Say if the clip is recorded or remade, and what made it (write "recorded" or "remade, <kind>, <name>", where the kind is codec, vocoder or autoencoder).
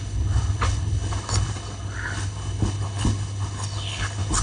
remade, codec, HILCodec